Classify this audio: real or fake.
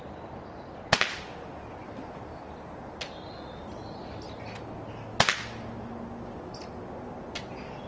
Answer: real